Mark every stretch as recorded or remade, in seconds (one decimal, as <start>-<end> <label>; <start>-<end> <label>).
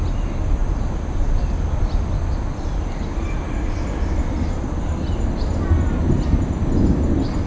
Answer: 0.0-7.5 recorded